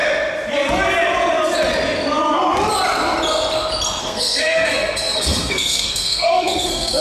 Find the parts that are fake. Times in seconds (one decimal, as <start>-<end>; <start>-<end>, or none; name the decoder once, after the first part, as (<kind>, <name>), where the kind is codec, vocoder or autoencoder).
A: 4.0-7.0 (codec, SNAC)